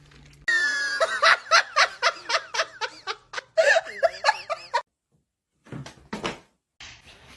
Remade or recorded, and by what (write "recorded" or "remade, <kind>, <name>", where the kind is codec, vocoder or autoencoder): recorded